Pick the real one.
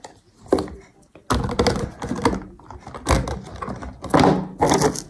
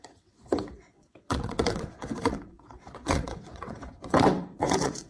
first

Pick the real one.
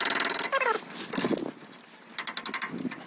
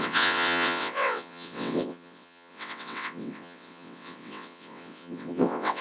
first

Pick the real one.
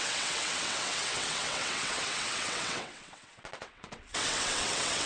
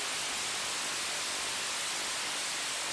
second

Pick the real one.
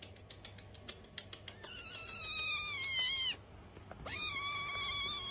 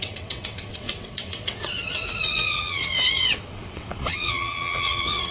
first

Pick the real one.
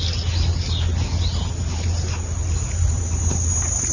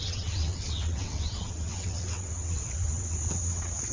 first